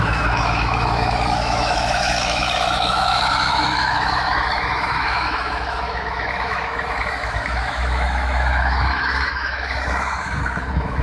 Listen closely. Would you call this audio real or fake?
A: fake